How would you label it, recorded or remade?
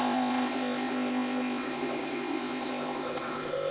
remade